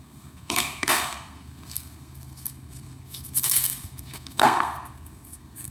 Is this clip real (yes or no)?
no